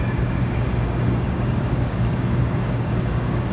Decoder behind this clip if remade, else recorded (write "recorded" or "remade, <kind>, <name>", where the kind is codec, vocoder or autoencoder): remade, codec, DAC